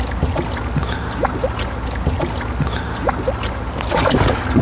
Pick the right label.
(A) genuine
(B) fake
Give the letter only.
A